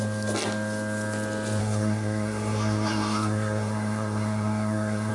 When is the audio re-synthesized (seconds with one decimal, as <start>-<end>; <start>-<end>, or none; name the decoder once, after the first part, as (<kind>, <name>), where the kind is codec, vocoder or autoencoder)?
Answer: 1.6-5.1 (codec, SNAC)